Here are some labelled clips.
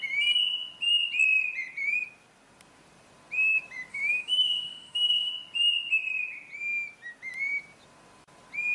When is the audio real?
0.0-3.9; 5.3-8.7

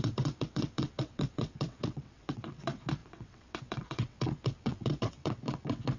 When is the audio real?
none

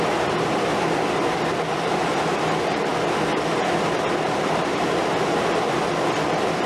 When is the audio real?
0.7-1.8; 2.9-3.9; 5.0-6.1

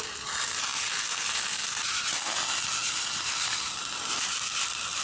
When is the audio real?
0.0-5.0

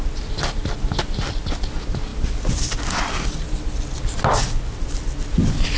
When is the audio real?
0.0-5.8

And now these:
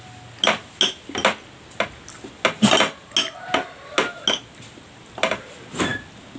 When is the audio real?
0.0-6.4